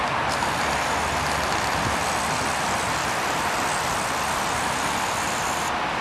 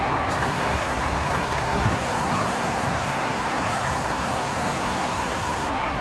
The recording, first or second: first